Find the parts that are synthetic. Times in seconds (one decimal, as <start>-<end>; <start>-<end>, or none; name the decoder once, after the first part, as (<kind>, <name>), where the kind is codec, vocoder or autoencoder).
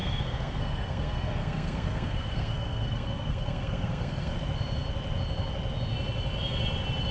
0.0-4.3 (codec, SNAC)